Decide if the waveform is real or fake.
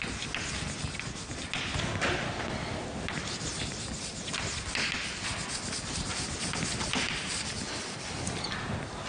real